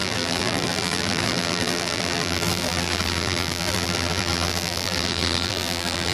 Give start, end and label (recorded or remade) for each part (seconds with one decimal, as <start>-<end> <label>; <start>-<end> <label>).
0.0-6.1 remade